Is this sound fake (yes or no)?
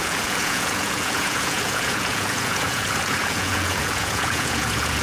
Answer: yes